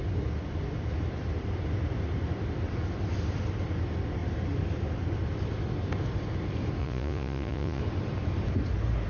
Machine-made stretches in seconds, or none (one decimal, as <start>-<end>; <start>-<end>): 6.8-7.8